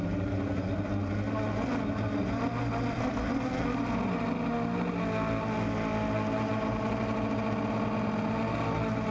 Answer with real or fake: real